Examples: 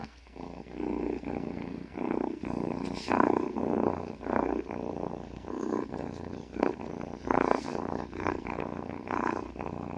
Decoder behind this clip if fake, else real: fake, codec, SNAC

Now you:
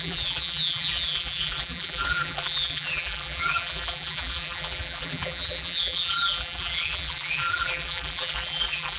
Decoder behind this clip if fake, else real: fake, vocoder, BigVGAN v2